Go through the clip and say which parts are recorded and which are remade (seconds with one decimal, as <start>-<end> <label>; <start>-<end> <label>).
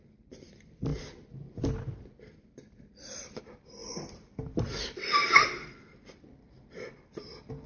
0.0-0.9 recorded; 0.9-3.4 remade; 3.4-3.8 recorded; 3.8-4.6 remade; 4.6-5.2 recorded; 5.2-6.9 remade; 6.9-7.7 recorded